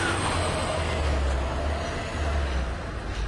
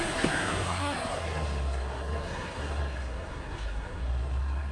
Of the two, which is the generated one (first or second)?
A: second